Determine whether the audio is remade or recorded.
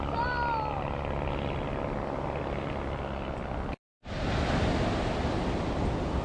recorded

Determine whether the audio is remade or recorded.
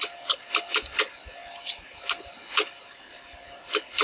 recorded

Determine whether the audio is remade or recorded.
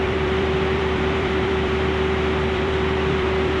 remade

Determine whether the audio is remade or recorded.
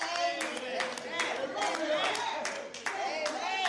recorded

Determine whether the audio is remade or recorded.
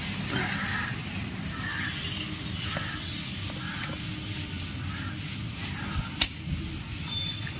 recorded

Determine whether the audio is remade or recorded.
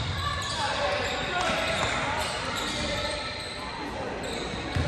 remade